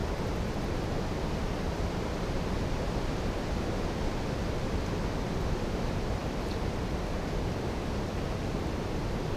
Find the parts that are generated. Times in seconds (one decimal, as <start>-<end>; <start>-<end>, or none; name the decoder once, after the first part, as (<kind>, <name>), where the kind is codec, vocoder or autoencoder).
none